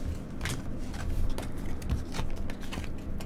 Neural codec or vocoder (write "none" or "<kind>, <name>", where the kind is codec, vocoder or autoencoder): none